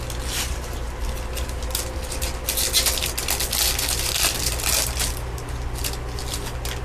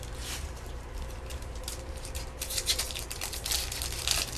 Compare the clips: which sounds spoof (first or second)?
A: second